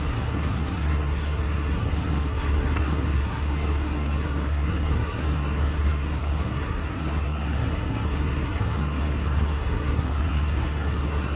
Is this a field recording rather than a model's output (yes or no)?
no